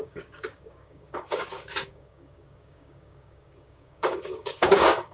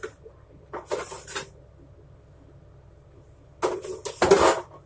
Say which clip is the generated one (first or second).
first